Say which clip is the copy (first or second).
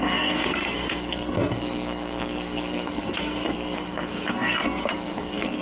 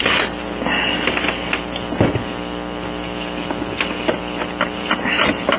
first